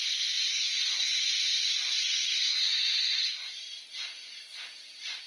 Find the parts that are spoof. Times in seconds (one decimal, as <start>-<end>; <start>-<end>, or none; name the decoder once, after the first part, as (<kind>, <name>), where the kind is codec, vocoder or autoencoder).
0.5-1.2 (codec, SNAC); 2.0-3.5